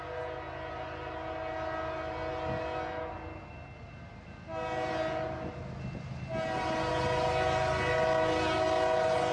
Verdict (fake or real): real